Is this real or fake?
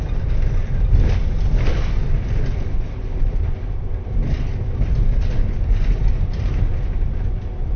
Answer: fake